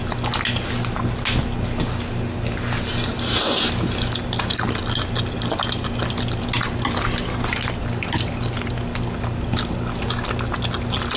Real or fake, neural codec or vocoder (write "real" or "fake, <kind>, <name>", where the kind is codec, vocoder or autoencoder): real